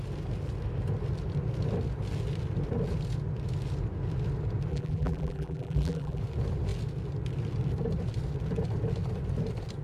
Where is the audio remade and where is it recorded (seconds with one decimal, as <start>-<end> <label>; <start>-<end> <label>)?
0.0-4.7 recorded; 4.7-6.2 remade; 6.2-9.8 recorded